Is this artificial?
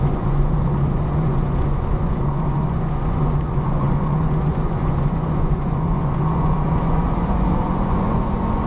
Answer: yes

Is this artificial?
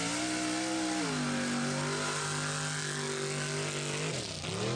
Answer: no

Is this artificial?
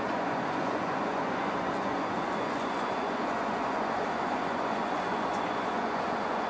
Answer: yes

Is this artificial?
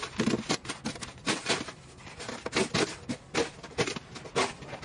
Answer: no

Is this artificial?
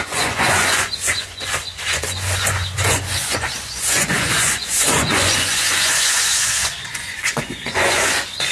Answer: yes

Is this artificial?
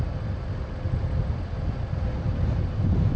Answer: no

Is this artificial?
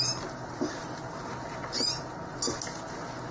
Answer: no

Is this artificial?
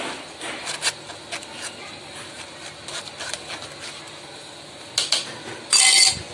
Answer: no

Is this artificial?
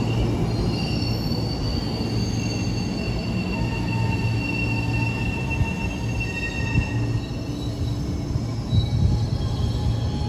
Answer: no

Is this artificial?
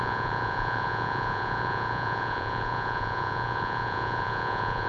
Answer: yes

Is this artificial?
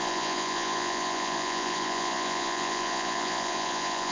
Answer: yes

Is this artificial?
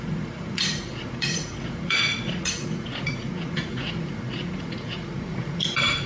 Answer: yes